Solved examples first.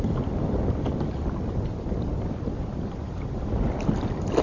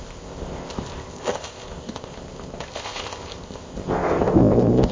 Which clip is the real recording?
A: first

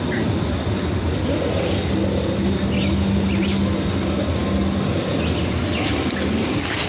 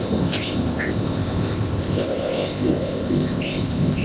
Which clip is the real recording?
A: first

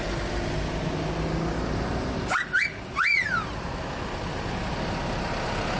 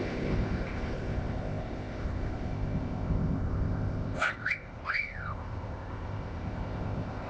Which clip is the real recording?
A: first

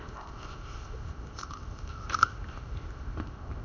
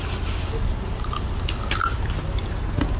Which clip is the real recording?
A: second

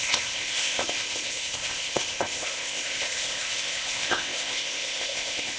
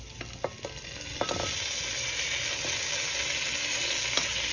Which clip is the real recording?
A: second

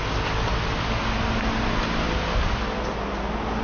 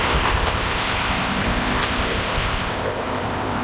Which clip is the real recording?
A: first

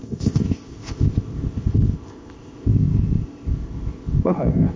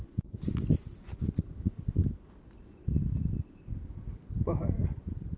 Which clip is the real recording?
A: second